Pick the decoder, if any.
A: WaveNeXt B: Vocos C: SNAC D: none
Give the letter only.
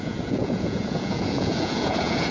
B